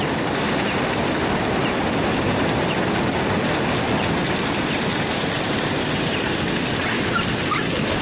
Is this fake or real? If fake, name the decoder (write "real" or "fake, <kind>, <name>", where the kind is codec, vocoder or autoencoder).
real